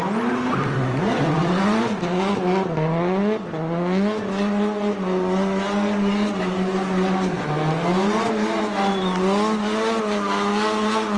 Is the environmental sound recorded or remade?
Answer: recorded